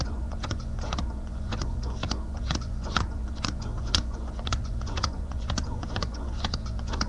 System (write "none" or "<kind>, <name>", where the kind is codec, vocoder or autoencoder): vocoder, Vocos